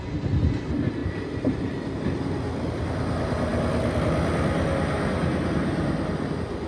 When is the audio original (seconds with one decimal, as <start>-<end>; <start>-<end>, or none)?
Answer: 0.0-1.0; 2.0-6.7